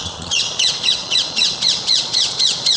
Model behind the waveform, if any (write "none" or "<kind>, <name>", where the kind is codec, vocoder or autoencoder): vocoder, Vocos